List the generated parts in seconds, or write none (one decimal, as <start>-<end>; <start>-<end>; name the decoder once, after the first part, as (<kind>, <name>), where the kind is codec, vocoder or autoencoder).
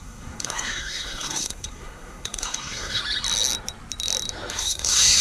0.0-3.0 (codec, SNAC); 4.5-5.2